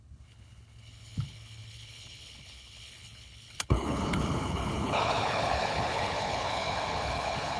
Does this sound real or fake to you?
fake